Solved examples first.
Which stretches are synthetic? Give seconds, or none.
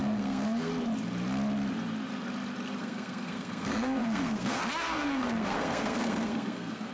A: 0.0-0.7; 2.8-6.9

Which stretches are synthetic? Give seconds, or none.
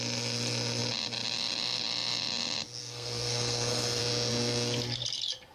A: 2.8-4.0